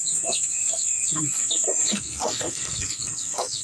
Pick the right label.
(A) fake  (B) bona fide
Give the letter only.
A